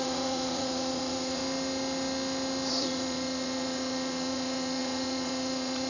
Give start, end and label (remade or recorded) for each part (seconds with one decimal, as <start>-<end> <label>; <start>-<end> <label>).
0.0-1.4 remade; 1.4-2.7 recorded; 2.7-5.9 remade